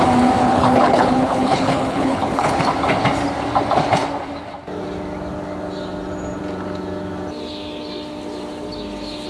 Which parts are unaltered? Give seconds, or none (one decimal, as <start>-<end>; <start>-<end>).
0.0-0.4; 2.6-9.3